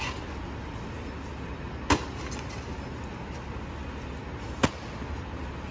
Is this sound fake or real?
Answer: real